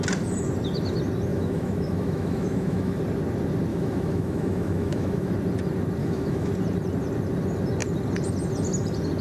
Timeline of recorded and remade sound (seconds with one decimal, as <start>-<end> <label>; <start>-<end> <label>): 0.0-1.3 recorded; 1.3-3.0 remade; 3.0-3.7 recorded; 3.7-5.3 remade; 5.3-6.0 recorded; 6.0-6.5 remade; 6.5-9.2 recorded